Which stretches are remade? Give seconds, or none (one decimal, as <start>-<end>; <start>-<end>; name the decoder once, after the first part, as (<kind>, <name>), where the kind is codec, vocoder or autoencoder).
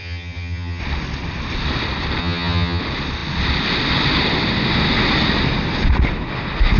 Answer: 0.0-0.8 (vocoder, HiFi-GAN); 2.2-2.8